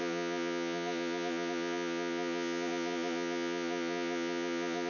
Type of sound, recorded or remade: remade